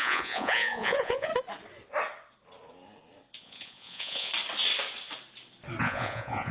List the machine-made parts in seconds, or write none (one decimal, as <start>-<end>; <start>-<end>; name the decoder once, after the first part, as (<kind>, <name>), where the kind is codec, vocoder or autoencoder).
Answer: 0.0-1.3 (vocoder, Vocos); 3.4-4.3; 5.8-6.5